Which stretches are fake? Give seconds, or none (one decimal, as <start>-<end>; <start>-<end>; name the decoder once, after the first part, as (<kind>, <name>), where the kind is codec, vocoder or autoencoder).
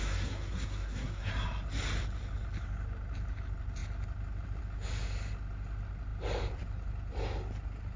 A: 0.0-1.3 (codec, SNAC)